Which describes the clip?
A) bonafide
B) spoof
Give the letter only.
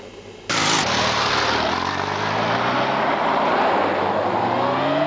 A